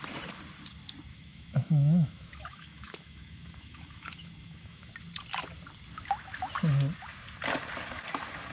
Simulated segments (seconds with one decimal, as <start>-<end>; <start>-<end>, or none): 1.1-4.9